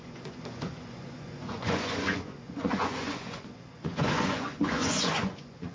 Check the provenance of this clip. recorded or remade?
remade